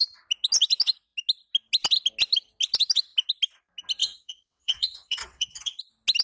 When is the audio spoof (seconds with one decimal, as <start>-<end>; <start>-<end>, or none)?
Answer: 4.0-5.8